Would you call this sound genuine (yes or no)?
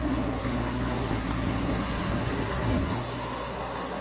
no